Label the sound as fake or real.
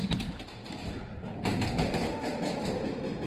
fake